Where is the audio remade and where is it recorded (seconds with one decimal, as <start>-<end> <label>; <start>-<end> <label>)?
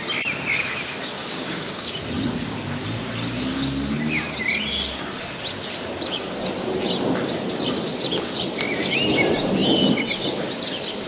0.0-1.2 recorded; 1.2-2.0 remade; 2.0-11.1 recorded